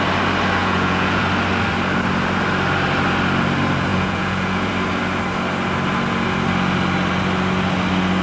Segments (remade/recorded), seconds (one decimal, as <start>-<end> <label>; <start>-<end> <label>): 0.0-0.6 recorded; 0.6-1.2 remade; 1.2-3.9 recorded; 3.9-4.7 remade; 4.7-8.2 recorded